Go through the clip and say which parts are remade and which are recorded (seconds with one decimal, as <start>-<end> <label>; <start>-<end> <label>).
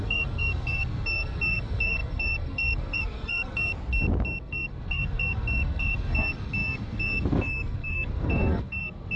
0.0-3.7 remade; 3.7-4.4 recorded; 4.4-9.2 remade